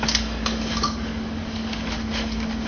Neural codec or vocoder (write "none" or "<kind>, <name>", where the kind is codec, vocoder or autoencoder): codec, DAC